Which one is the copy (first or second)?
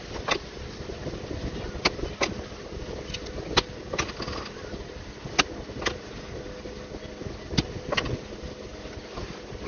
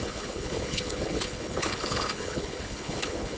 second